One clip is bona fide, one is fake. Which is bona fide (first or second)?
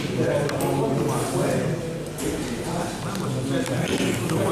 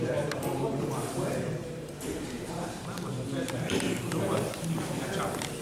first